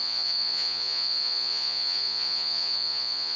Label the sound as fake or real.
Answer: fake